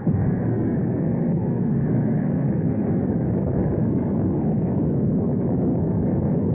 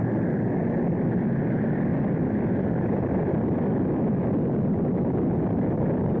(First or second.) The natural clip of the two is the second